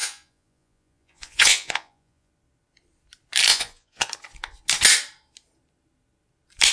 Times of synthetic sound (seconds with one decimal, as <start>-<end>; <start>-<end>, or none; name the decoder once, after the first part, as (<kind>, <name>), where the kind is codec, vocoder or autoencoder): 0.0-2.3 (vocoder, Vocos); 3.5-4.1